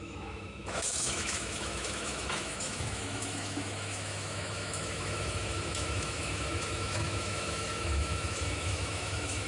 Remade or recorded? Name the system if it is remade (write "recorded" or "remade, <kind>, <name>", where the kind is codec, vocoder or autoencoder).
remade, autoencoder, DAC-VAE